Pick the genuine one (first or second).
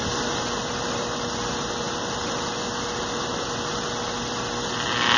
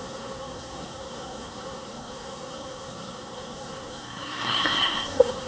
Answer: first